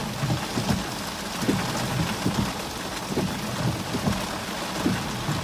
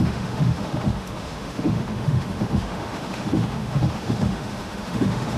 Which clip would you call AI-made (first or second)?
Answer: second